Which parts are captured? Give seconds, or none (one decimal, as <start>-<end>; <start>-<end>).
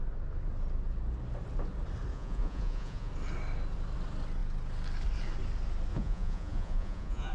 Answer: 0.0-2.1; 3.1-5.9